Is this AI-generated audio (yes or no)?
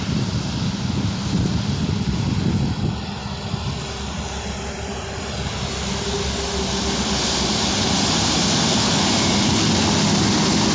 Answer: no